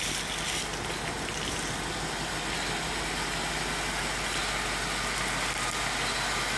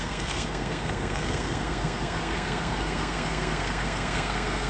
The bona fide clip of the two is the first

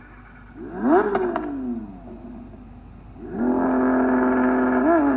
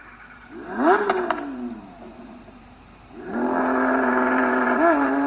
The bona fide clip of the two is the first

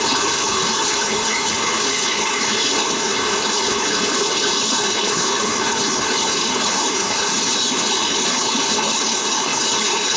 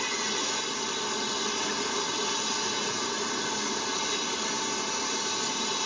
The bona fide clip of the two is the second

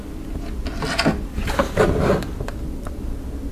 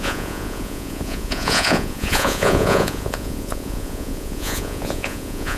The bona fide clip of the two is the first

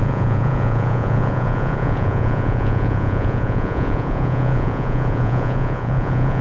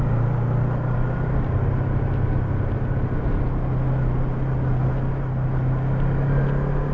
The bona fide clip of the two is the second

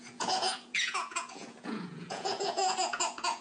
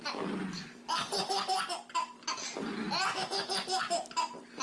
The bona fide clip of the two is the second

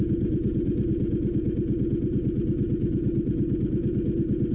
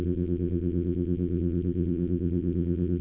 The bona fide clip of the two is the first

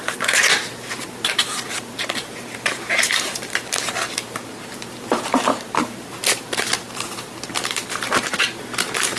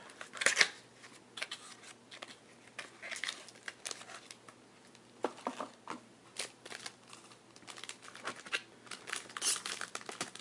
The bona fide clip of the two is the second